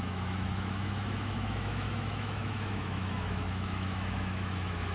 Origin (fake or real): fake